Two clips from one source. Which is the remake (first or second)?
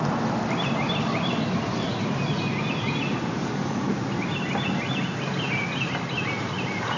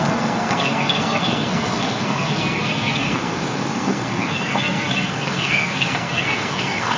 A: second